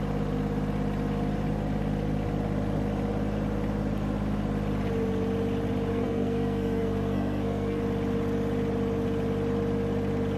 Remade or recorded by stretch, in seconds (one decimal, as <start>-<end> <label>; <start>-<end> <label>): 0.0-5.9 recorded; 5.9-7.8 remade; 7.8-10.4 recorded